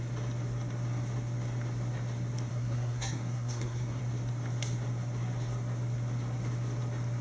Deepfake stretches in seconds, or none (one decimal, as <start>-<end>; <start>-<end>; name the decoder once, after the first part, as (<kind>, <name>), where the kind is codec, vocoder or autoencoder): 2.5-4.0 (codec, SNAC)